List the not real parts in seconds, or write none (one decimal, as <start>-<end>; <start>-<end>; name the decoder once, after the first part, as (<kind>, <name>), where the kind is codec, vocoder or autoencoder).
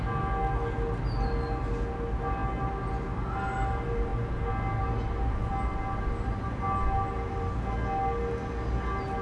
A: none